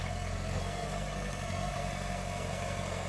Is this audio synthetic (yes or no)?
yes